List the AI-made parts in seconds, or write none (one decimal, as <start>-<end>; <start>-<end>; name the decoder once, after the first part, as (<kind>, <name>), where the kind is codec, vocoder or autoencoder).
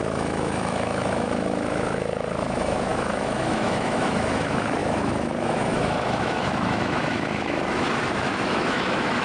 0.0-9.2 (autoencoder, DAC-VAE)